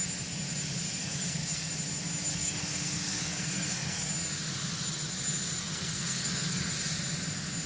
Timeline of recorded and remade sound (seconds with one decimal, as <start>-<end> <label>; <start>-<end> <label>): 0.0-1.0 recorded; 1.0-1.7 remade; 1.7-2.3 recorded; 2.3-4.1 remade; 4.1-5.6 recorded; 5.6-6.7 remade; 6.7-7.7 recorded

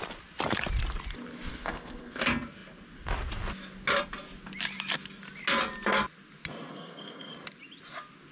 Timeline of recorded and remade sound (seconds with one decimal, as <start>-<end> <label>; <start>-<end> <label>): 0.0-1.5 recorded; 1.5-2.2 remade; 2.2-6.7 recorded; 6.7-7.3 remade; 7.3-8.3 recorded

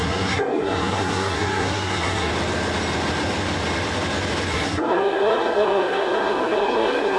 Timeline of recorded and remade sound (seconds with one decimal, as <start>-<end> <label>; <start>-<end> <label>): 0.0-2.3 remade; 2.3-4.5 recorded; 4.5-7.2 remade

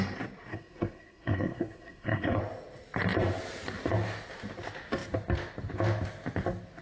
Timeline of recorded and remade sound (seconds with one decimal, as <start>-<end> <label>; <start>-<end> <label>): 0.0-0.5 recorded; 0.5-2.4 remade; 2.4-6.8 recorded

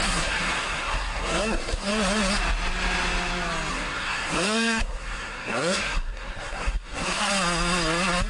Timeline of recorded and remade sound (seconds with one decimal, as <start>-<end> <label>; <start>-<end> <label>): 0.0-1.9 remade; 1.9-3.7 recorded; 3.7-7.3 remade; 7.3-8.3 recorded

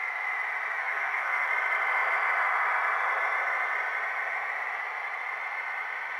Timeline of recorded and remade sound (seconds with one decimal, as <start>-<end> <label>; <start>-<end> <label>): 0.0-0.8 recorded; 0.8-1.5 remade; 1.5-6.2 recorded

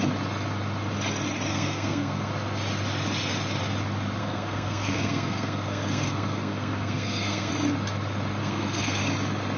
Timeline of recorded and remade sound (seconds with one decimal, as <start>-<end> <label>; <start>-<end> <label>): 0.0-1.5 recorded; 1.5-2.3 remade; 2.3-4.2 recorded; 4.2-7.5 remade; 7.5-8.4 recorded; 8.4-9.0 remade; 9.0-9.6 recorded